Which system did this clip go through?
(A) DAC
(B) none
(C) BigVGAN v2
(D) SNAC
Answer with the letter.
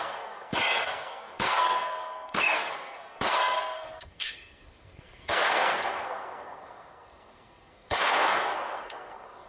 D